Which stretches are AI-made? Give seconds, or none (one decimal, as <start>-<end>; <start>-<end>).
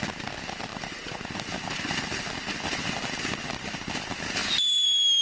none